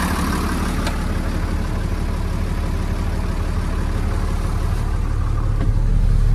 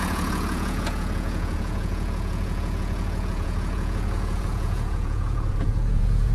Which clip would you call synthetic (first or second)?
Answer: second